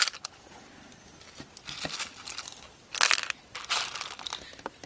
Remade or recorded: recorded